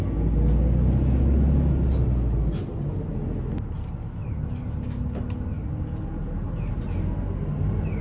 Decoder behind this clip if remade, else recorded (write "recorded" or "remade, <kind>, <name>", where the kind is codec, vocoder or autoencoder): recorded